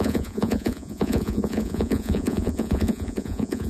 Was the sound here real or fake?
fake